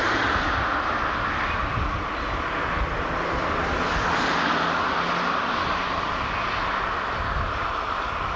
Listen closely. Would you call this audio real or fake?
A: real